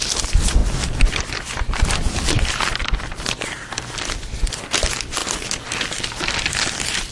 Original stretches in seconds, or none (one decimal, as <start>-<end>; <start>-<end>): 0.0-0.6; 4.8-5.2